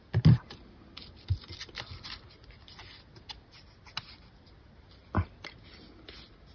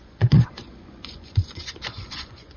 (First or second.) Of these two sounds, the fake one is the second